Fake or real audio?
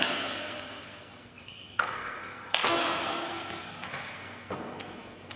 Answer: fake